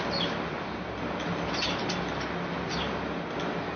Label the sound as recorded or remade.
recorded